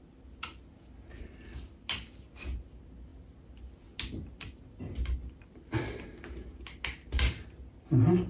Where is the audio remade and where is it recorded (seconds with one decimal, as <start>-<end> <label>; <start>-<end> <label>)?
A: 0.0-5.2 recorded; 5.2-6.0 remade; 6.0-8.3 recorded